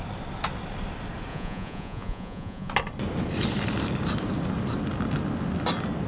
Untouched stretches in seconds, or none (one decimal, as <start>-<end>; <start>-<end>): 0.0-1.3; 2.7-6.1

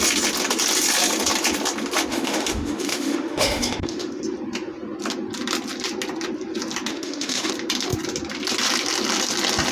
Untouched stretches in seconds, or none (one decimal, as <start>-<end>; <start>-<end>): 0.0-2.1; 4.2-6.9; 7.5-9.7

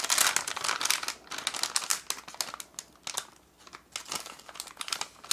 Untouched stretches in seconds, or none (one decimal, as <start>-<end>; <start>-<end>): 0.0-5.3

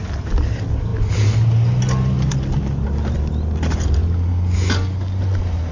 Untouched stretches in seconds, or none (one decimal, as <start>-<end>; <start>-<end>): 0.0-5.7